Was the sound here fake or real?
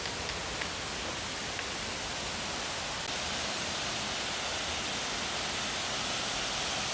real